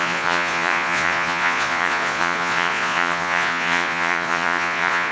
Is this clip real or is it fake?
fake